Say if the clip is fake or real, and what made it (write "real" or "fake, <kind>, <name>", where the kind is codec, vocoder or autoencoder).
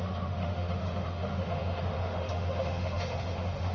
fake, autoencoder, DAC-VAE